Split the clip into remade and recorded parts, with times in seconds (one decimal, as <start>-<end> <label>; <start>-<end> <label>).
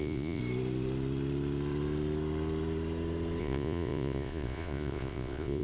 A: 0.0-0.4 remade; 0.4-3.4 recorded; 3.4-5.6 remade